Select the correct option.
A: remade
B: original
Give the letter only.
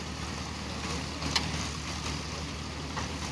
B